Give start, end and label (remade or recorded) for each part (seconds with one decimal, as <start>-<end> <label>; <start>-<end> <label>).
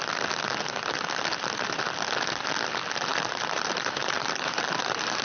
0.0-3.1 recorded; 3.1-5.2 remade